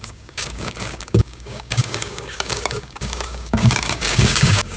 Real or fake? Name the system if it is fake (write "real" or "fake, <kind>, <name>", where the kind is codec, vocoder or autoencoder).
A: fake, codec, DAC